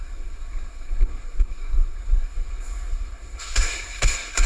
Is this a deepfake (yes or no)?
yes